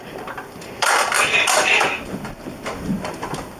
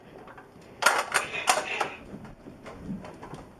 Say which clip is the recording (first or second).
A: second